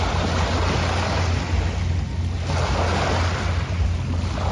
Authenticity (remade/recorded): recorded